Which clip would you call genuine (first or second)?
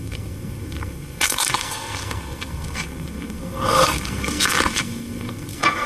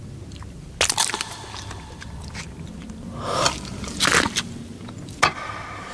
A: second